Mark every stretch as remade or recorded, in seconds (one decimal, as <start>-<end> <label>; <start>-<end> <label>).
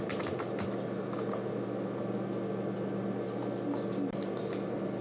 0.0-5.0 recorded